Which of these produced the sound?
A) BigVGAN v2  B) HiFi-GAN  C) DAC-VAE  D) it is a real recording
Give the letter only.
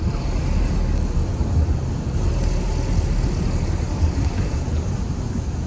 D